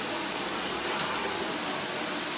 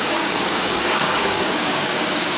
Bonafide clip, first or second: first